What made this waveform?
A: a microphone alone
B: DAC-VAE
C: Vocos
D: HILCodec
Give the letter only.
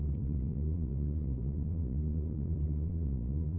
C